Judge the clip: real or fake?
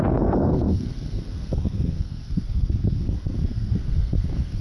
fake